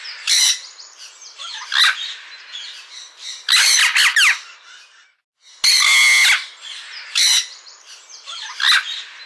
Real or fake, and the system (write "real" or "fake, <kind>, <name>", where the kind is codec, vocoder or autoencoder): real